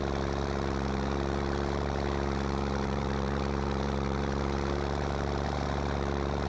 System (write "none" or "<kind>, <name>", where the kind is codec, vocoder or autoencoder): vocoder, BigVGAN v2